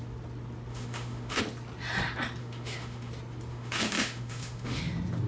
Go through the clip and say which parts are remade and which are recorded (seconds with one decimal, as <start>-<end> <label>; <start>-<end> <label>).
0.0-0.7 recorded; 0.7-1.4 remade; 1.4-2.4 recorded; 2.4-3.1 remade; 3.1-3.5 recorded; 3.5-4.8 remade; 4.8-5.3 recorded